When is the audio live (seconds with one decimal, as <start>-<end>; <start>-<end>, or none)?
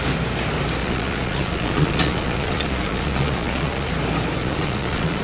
0.0-0.8; 3.9-4.4